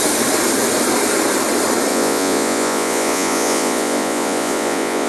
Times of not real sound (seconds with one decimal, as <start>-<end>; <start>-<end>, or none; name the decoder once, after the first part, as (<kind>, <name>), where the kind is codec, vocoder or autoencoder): 1.9-5.1 (vocoder, Vocos)